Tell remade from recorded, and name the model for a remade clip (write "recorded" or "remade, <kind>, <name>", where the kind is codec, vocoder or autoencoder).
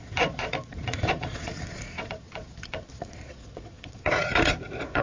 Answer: remade, vocoder, Vocos